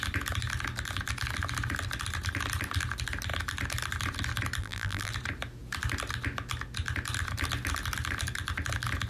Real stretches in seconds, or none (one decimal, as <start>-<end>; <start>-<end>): 0.0-4.6; 5.1-9.1